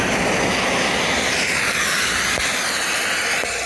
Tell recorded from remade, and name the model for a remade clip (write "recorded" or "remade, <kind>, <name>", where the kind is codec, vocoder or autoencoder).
recorded